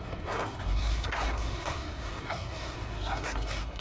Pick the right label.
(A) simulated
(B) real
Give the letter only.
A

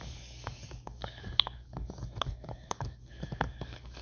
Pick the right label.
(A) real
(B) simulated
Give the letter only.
B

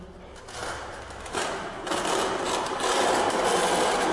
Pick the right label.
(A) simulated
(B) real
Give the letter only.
B